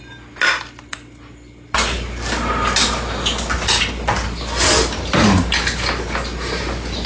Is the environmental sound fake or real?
real